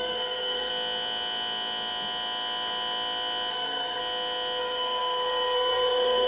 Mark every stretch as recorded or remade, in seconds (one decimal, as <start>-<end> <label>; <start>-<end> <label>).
0.0-0.7 remade; 0.7-3.5 recorded; 3.5-4.0 remade; 4.0-4.6 recorded; 4.6-6.3 remade